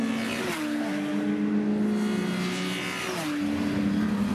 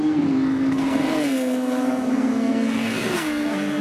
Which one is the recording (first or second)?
first